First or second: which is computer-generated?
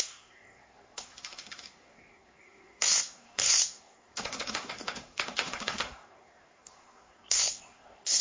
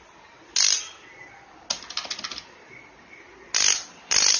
first